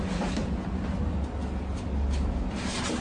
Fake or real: real